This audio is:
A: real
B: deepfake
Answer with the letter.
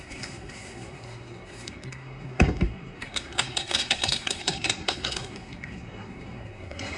B